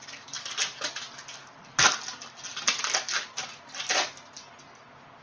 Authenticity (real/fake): real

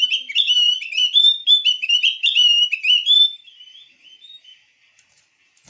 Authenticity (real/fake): fake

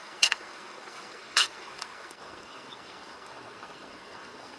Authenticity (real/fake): fake